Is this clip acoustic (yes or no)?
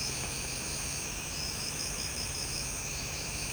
no